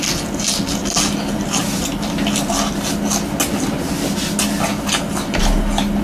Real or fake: real